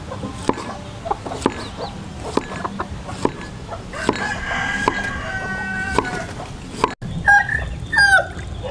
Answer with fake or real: real